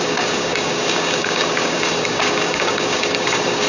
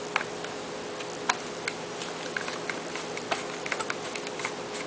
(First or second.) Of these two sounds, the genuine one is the second